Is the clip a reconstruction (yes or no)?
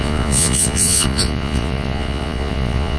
yes